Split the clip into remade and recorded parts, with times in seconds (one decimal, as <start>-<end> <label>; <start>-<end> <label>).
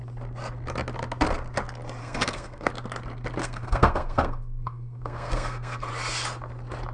0.0-2.0 recorded; 2.0-2.7 remade; 2.7-3.4 recorded; 3.4-5.9 remade; 5.9-6.9 recorded